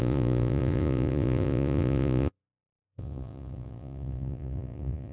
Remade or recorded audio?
remade